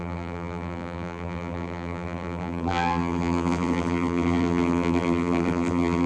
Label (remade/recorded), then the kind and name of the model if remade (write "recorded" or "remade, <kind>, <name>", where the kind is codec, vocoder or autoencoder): remade, vocoder, BigVGAN v2